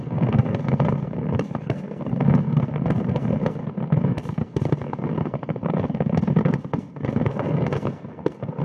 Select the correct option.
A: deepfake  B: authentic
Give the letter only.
A